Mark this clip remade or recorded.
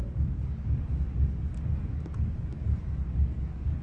remade